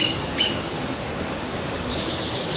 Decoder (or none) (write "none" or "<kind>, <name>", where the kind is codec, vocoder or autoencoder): codec, DAC